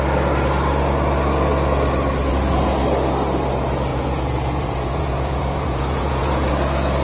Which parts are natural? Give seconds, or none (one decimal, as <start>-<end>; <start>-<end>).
0.0-3.9; 6.5-7.0